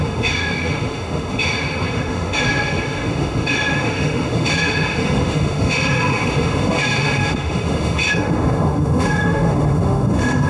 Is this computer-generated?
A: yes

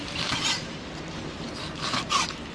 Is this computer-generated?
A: no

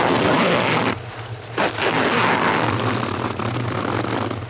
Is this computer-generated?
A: no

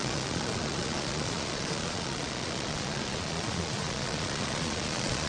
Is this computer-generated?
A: yes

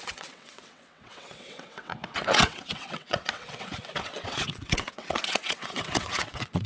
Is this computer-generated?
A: yes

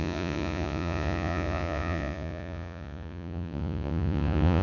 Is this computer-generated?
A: yes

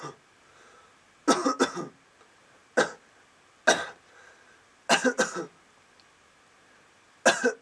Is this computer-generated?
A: no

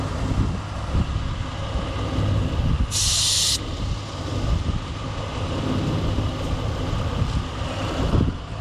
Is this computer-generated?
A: no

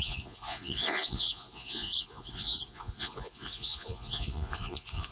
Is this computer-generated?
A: yes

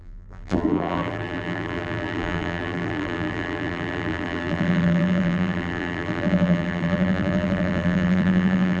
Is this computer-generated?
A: yes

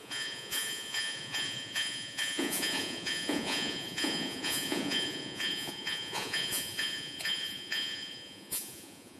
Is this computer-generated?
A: yes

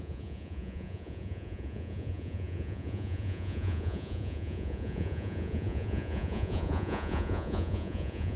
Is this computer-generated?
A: yes